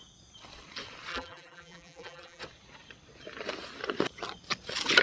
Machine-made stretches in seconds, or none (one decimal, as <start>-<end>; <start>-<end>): 1.1-2.4